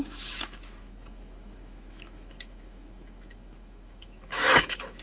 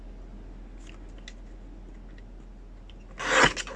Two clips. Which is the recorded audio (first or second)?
second